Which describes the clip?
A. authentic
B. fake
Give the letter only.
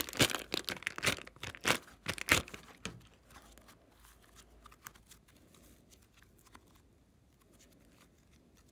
A